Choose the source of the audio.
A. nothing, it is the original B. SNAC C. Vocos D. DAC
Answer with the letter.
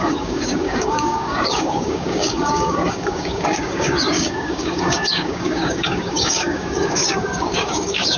D